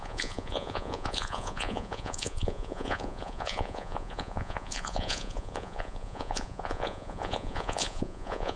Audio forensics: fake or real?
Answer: fake